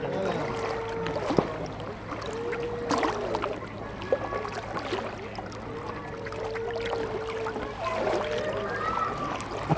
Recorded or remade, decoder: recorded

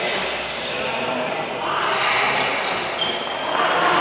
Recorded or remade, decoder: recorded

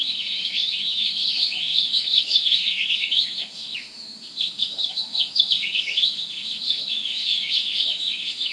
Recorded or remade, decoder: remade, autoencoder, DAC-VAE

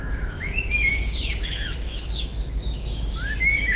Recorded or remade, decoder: remade, autoencoder, DAC-VAE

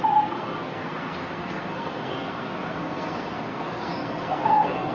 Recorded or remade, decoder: remade, codec, SNAC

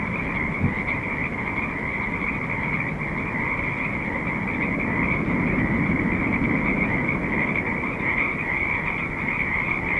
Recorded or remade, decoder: recorded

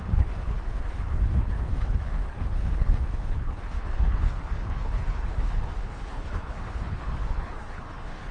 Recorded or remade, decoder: remade, codec, HILCodec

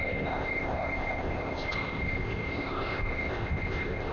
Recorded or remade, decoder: remade, codec, ZipCodec